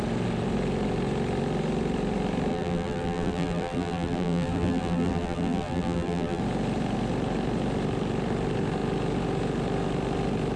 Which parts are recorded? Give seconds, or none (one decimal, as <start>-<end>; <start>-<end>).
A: 0.0-2.5; 6.4-10.6